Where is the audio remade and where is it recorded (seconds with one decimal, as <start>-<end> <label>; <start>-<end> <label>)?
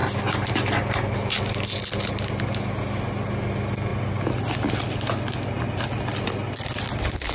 0.0-7.3 recorded